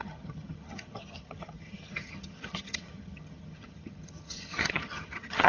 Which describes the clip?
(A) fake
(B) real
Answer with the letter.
A